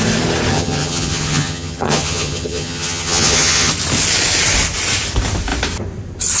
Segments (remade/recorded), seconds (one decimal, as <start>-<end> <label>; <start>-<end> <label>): 0.0-0.5 recorded; 0.5-3.7 remade; 3.7-6.4 recorded